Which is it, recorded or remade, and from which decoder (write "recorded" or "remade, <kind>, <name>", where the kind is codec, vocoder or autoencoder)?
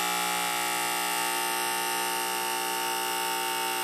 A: recorded